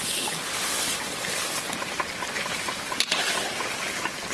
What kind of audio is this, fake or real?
real